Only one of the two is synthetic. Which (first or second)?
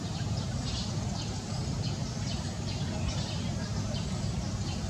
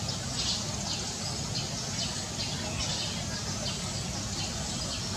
first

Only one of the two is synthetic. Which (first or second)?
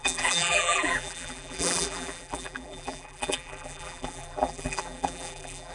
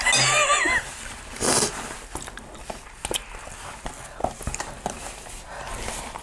first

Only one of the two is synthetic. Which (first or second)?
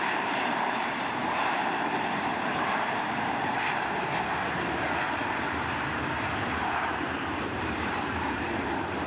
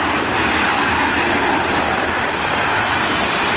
first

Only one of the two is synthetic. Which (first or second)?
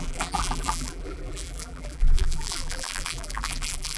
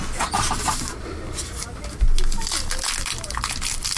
first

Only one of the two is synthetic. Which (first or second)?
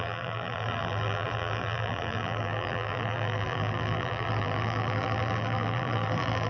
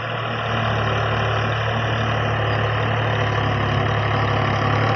first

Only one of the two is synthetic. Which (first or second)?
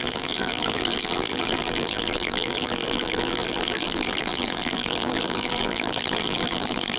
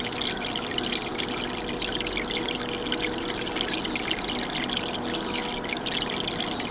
first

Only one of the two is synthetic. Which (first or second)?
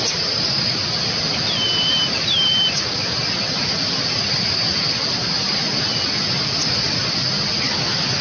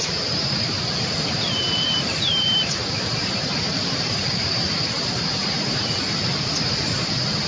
second